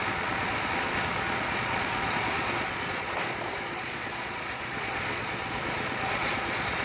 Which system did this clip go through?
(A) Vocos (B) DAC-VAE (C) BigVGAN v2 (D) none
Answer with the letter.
A